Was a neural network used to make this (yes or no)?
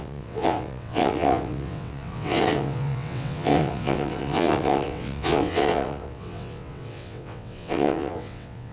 yes